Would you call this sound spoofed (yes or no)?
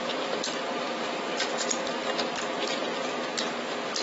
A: no